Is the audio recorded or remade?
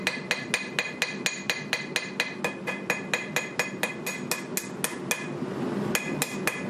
recorded